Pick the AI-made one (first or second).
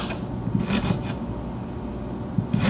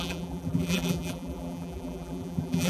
second